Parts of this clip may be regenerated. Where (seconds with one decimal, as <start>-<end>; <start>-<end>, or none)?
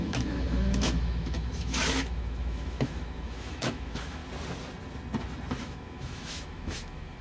0.0-4.2; 5.6-7.2